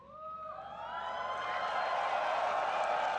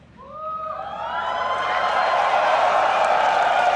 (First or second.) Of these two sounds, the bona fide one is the first